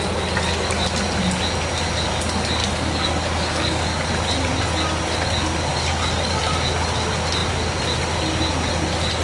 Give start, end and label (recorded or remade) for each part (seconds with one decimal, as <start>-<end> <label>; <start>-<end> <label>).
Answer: 0.0-2.6 recorded; 2.6-4.1 remade; 4.1-5.7 recorded; 5.7-6.4 remade; 6.4-9.2 recorded